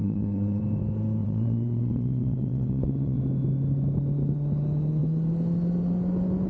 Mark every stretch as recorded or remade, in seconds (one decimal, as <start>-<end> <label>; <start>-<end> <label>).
0.0-0.6 remade; 0.6-1.2 recorded; 1.2-3.2 remade; 3.2-6.5 recorded